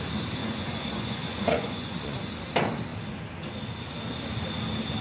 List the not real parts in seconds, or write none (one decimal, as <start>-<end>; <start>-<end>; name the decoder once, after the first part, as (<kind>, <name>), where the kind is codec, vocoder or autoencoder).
0.4-2.3 (vocoder, Vocos)